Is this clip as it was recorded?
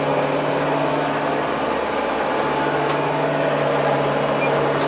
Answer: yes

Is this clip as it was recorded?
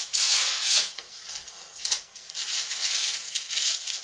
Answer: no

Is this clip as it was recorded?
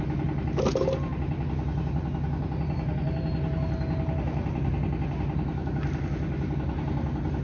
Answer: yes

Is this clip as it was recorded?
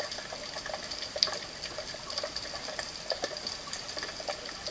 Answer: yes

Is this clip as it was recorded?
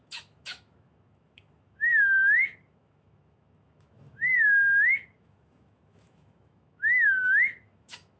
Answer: no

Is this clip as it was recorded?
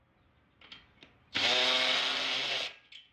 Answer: yes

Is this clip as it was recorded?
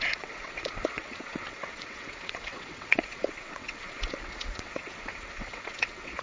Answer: no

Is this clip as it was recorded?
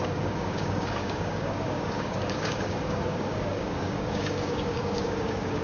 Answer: no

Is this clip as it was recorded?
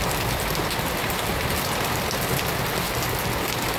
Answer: yes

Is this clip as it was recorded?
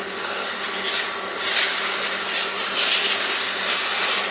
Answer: yes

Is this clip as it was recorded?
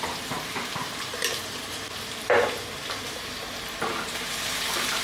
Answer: no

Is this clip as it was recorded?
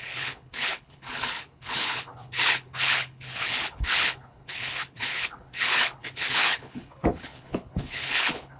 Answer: no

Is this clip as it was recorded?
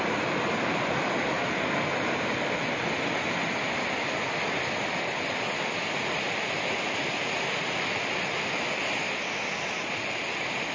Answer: yes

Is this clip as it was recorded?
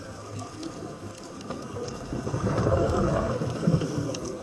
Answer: no